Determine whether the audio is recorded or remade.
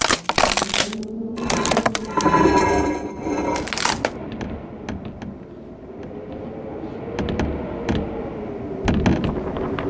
recorded